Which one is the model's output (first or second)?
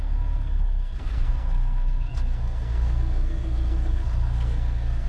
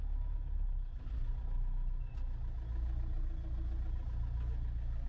first